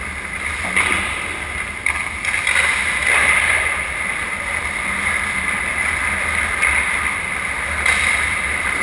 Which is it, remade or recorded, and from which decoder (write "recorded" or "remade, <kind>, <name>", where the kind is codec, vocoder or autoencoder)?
recorded